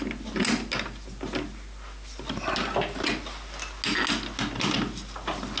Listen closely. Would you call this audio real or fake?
real